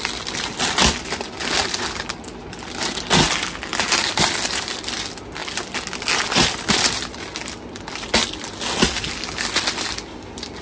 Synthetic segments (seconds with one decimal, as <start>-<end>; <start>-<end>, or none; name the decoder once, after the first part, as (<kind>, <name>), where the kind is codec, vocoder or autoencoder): none